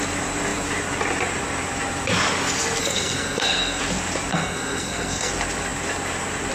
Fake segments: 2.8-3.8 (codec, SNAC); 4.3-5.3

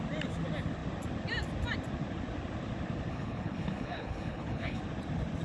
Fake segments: 3.1-4.8 (codec, HILCodec)

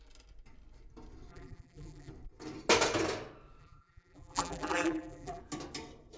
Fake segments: 1.3-2.1 (vocoder, BigVGAN v2); 3.6-5.4

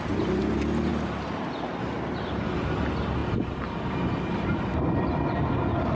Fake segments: none

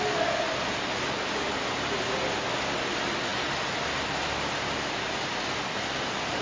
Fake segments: 0.0-3.3 (vocoder, BigVGAN v2); 4.2-6.4

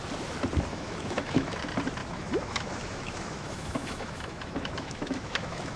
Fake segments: 0.7-1.6 (autoencoder, DAC-VAE); 2.0-5.8

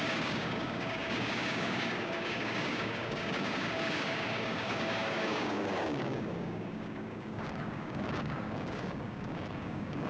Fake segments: 0.0-10.1 (codec, DAC)